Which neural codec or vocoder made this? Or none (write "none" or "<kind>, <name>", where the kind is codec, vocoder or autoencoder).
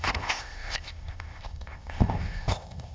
codec, ZipCodec